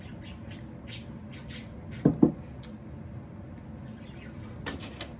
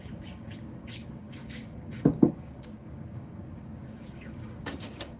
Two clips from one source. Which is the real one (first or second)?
first